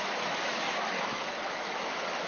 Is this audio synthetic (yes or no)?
yes